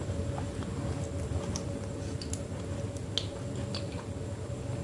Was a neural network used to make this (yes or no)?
no